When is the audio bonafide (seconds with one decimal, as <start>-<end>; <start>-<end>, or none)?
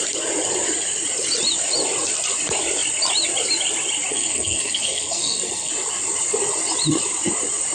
0.0-4.1; 5.7-7.7